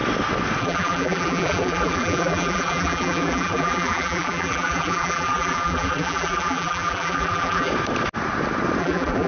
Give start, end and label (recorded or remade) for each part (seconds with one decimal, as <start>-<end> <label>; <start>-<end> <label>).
0.0-0.6 recorded; 0.6-7.7 remade; 7.7-8.8 recorded; 8.8-9.3 remade